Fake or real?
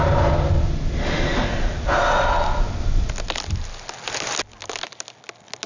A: real